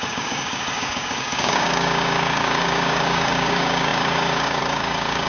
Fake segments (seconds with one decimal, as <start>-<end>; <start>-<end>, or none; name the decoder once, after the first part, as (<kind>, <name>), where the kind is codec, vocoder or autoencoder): 0.0-5.3 (codec, DAC)